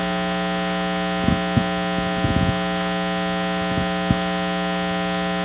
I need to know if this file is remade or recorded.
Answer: recorded